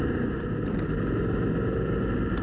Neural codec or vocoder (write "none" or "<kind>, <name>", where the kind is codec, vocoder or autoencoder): none